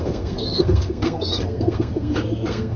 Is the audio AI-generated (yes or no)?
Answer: yes